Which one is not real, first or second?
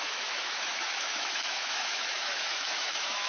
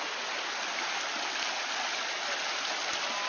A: first